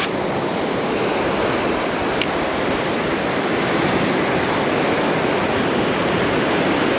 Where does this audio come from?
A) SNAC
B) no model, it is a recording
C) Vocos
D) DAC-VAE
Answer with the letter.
B